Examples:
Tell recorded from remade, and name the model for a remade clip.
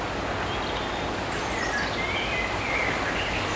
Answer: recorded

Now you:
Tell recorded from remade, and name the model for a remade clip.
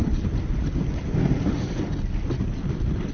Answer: recorded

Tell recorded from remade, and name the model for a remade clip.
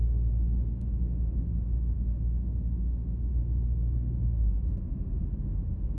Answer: remade, autoencoder, DAC-VAE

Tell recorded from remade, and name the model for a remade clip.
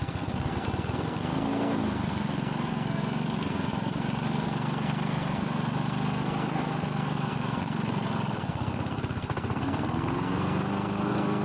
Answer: remade, codec, SNAC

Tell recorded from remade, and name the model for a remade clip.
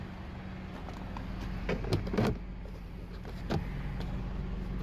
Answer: recorded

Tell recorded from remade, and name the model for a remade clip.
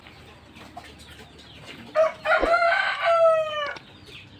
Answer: recorded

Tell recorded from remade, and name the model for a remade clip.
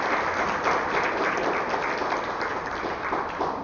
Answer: recorded